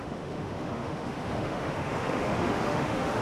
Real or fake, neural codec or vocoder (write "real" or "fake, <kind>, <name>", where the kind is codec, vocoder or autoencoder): fake, autoencoder, DAC-VAE